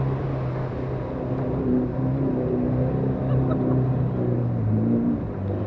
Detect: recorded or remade recorded